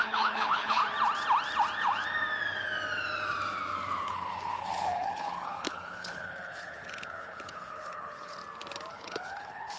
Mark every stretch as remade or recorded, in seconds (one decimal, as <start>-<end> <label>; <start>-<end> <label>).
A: 0.0-0.8 remade; 0.8-4.0 recorded; 4.0-8.4 remade; 8.4-8.9 recorded; 8.9-9.8 remade